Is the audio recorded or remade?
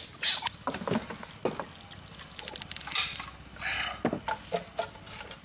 recorded